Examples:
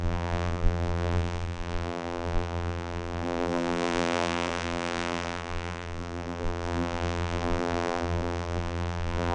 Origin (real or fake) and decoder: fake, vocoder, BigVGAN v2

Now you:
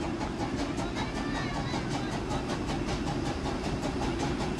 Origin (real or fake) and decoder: real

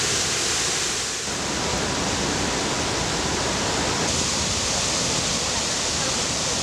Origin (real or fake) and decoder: real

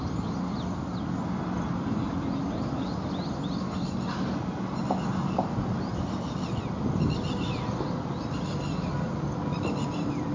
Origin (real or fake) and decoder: real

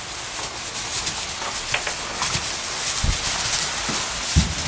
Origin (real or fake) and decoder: real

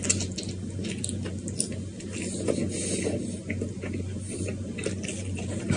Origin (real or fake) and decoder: real